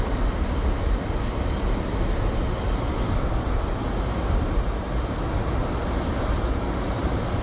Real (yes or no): yes